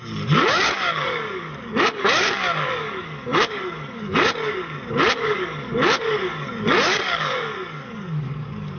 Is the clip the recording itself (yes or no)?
no